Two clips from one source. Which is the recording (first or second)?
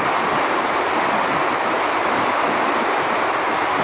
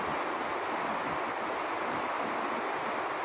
second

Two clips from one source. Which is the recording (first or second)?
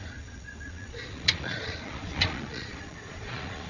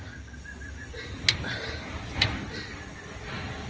second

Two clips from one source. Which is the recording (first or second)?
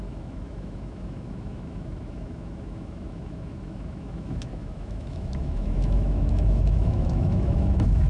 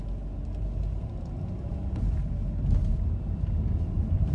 second